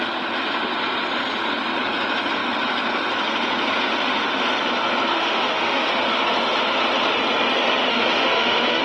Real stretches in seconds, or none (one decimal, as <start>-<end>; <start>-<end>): 0.0-5.1; 5.9-7.9